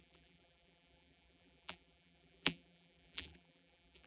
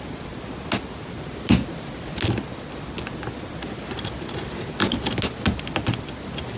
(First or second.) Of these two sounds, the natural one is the second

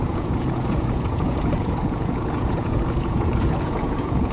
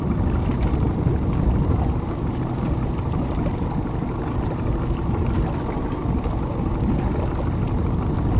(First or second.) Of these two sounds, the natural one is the second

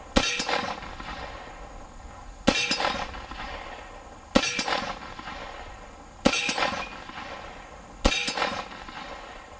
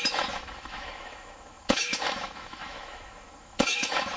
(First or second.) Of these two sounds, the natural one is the first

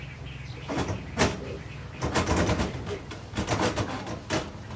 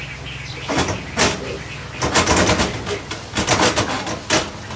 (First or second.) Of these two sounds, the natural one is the second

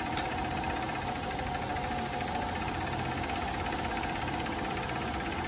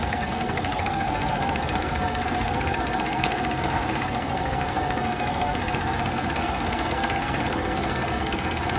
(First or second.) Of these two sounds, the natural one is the first